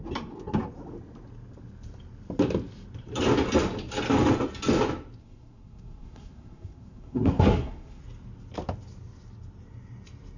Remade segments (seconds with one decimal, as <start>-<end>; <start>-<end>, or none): 5.2-8.0